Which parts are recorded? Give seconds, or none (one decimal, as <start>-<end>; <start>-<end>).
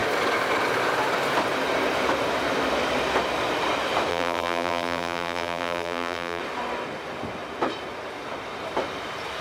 0.0-4.1; 6.4-9.4